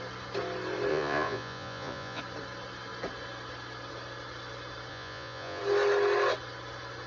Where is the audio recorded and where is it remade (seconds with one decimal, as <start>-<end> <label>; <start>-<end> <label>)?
0.0-0.9 recorded; 0.9-2.2 remade; 2.2-4.9 recorded; 4.9-5.6 remade; 5.6-7.1 recorded